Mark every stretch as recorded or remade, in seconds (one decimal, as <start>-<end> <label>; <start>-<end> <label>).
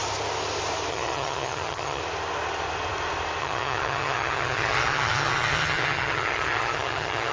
0.0-0.9 recorded; 0.9-2.0 remade; 2.0-3.4 recorded; 3.4-7.3 remade